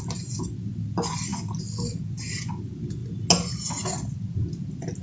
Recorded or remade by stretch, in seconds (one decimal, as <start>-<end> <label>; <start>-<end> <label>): 0.0-5.0 recorded